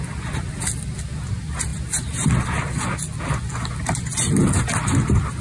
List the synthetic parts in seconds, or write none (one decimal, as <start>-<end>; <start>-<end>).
none